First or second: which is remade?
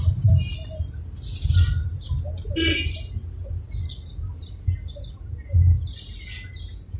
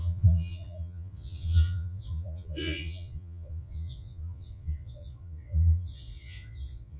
second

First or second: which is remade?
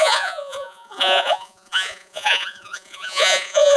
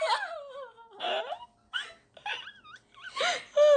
first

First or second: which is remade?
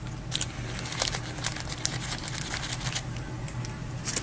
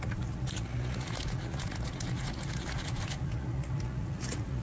second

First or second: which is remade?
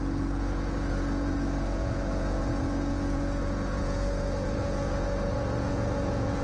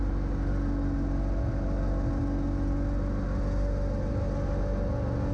first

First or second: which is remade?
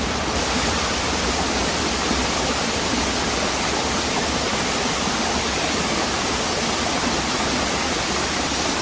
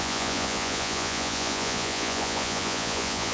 second